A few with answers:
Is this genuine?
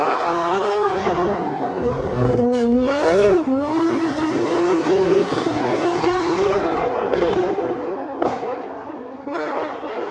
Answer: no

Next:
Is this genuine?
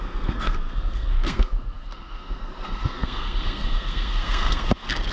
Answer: no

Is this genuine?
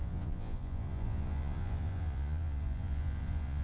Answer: no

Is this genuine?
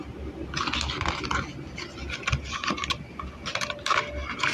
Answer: yes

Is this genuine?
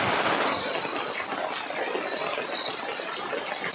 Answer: yes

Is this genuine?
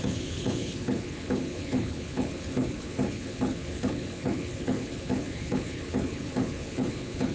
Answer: no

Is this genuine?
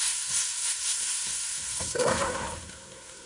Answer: no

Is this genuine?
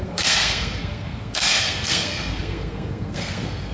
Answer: no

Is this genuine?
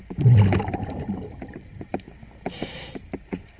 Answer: yes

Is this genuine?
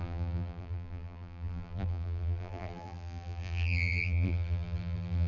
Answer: no